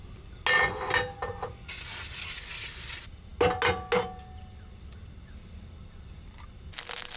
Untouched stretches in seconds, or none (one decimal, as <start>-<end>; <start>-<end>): 0.0-7.2